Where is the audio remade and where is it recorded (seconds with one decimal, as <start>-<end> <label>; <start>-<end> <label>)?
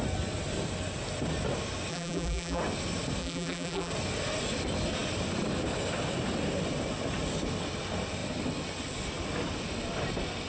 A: 0.0-1.9 recorded; 1.9-2.6 remade; 2.6-3.2 recorded; 3.2-3.9 remade; 3.9-10.5 recorded